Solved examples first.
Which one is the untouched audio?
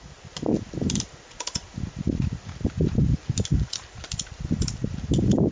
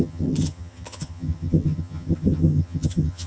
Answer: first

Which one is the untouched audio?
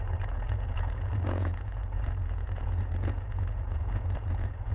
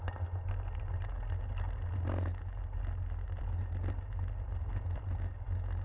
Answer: second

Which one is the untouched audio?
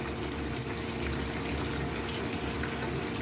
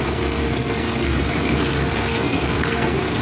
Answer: first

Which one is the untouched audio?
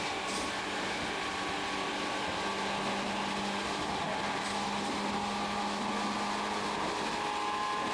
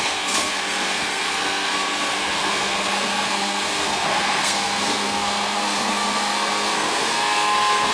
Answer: first